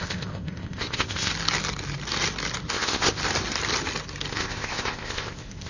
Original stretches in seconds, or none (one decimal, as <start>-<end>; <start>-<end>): 1.3-2.7; 3.2-4.3